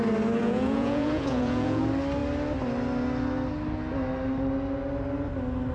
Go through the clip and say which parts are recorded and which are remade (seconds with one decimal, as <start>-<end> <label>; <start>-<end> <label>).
0.0-0.4 recorded; 0.4-1.8 remade; 1.8-5.7 recorded